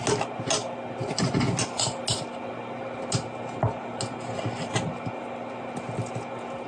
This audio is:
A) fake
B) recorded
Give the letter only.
B